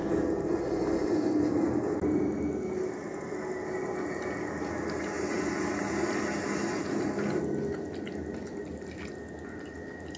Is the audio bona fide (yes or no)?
yes